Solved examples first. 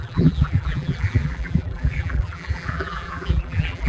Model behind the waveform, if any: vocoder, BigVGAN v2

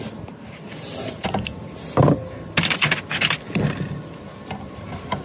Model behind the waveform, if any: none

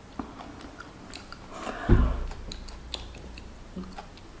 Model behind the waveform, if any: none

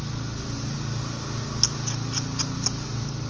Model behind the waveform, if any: none